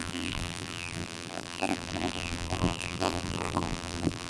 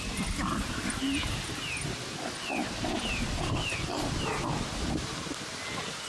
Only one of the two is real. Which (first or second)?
second